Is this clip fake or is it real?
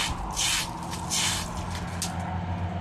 real